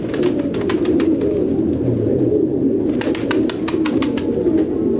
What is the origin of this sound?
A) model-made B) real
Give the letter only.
B